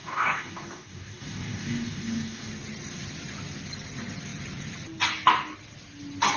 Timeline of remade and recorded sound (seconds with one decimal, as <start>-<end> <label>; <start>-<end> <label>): 0.0-2.5 remade; 2.5-6.4 recorded

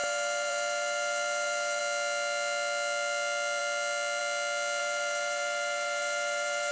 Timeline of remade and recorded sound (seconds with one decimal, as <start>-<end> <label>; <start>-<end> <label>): 0.0-1.8 remade; 1.8-4.8 recorded; 4.8-6.7 remade